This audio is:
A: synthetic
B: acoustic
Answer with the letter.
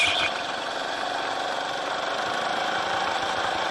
B